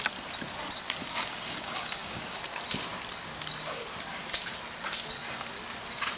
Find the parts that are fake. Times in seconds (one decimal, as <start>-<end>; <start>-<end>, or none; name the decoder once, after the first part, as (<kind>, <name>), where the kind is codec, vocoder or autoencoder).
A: 1.0-2.4 (codec, DAC)